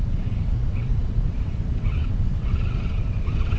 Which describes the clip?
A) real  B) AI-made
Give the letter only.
B